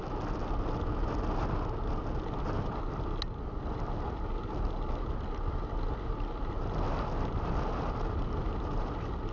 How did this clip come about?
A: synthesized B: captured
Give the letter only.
B